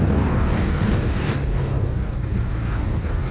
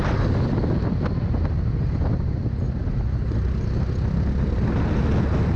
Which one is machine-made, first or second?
first